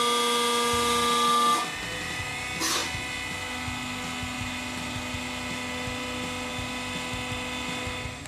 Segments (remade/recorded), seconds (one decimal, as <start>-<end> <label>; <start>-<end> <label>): 0.0-8.3 recorded